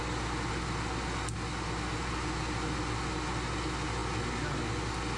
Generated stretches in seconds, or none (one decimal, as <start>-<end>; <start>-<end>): none